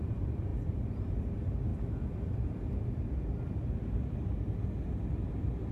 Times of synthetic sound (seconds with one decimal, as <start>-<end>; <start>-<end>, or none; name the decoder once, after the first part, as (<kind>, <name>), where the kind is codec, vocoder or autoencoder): 0.0-0.5 (vocoder, BigVGAN v2); 1.1-1.7; 5.1-5.7